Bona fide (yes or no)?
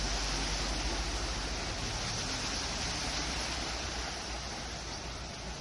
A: yes